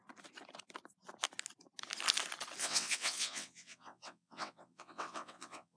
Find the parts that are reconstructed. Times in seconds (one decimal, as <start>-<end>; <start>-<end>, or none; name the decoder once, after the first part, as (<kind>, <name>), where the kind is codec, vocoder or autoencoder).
2.6-5.8 (vocoder, WaveNeXt)